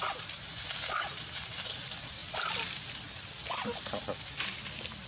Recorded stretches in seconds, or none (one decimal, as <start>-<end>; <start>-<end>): 0.0-5.1